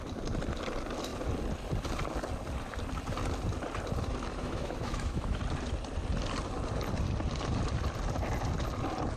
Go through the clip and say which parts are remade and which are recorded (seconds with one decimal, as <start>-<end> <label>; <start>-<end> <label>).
0.0-4.4 recorded; 4.4-5.4 remade; 5.4-9.2 recorded